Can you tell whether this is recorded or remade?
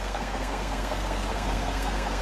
remade